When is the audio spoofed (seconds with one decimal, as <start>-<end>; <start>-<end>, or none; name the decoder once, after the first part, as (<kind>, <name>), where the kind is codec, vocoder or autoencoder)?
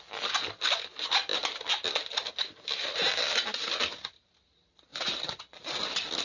none